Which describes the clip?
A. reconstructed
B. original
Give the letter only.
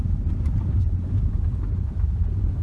B